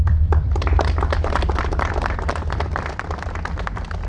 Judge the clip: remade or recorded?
remade